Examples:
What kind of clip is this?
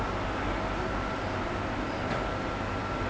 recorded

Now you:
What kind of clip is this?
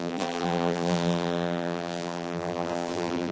remade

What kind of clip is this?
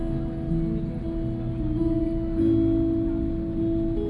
recorded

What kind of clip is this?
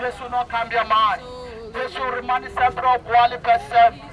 recorded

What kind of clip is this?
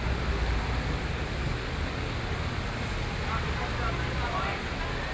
recorded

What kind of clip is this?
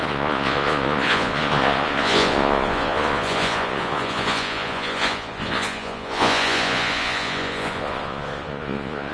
remade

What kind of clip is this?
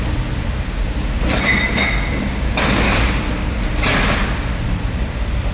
recorded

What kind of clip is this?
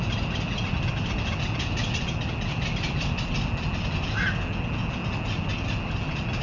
recorded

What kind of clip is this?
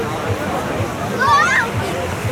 recorded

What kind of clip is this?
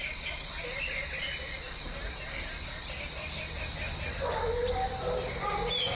recorded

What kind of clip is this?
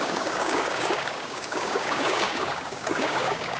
remade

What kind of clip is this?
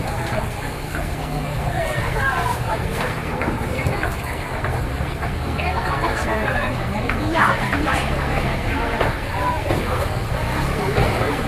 remade